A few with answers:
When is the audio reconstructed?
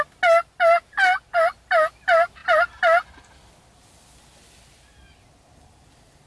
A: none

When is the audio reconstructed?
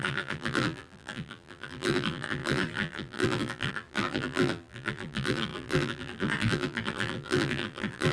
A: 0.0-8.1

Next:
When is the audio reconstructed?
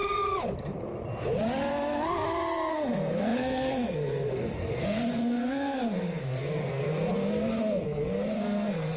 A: 2.7-9.0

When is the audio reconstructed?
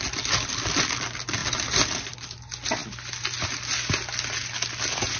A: none